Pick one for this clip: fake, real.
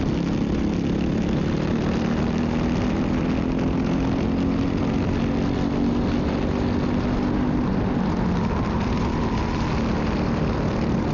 real